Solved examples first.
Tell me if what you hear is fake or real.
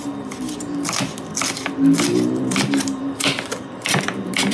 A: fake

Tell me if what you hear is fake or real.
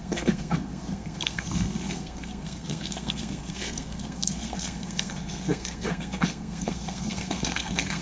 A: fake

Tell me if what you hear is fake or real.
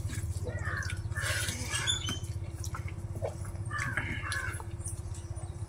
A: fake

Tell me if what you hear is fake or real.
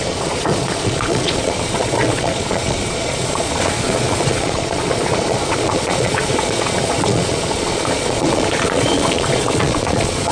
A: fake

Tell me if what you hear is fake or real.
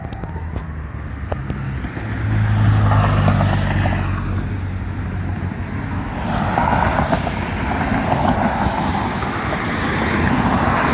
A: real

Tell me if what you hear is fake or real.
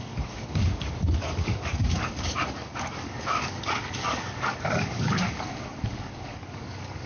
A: fake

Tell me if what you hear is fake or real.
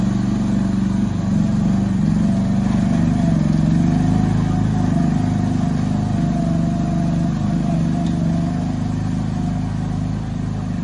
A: real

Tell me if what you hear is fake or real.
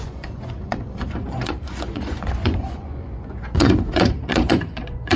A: fake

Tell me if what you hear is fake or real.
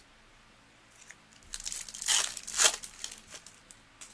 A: real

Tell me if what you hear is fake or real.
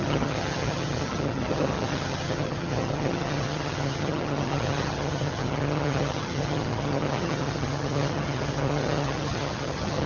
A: fake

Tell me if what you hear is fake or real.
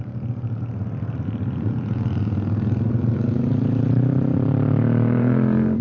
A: fake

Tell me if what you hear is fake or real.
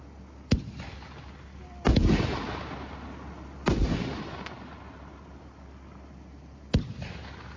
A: real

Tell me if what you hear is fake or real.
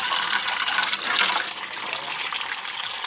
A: real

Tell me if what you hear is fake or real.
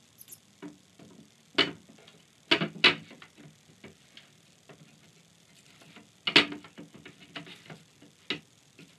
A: real